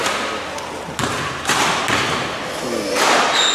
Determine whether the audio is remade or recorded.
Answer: recorded